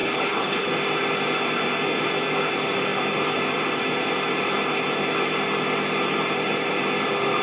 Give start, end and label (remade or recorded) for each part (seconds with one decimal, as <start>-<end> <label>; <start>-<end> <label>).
0.0-0.7 remade; 0.7-7.4 recorded

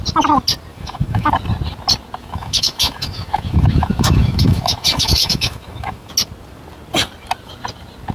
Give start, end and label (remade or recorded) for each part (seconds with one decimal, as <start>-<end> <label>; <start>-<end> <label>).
0.0-0.7 recorded; 0.7-1.3 remade; 1.3-2.2 recorded; 2.2-6.1 remade; 6.1-8.1 recorded